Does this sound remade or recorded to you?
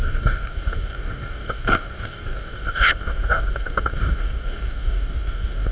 remade